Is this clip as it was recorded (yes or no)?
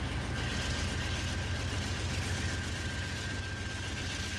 yes